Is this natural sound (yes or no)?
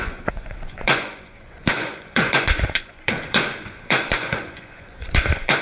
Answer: no